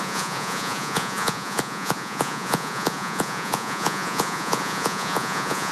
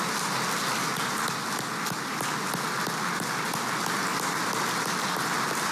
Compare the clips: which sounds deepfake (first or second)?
first